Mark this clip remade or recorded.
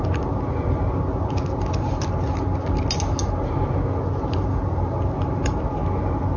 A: recorded